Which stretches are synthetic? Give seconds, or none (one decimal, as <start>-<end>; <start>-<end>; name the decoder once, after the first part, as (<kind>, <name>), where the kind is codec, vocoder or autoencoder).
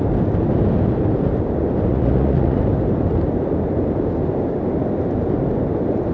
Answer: 1.9-2.6 (vocoder, Vocos)